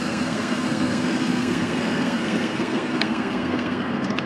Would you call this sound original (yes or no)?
no